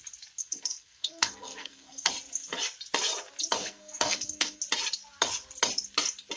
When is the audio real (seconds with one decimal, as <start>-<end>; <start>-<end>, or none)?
0.0-0.4; 2.1-3.6; 4.6-6.4